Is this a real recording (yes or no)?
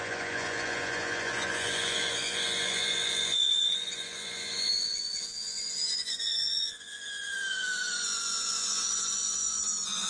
no